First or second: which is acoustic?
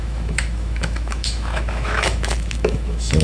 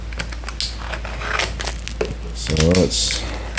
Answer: second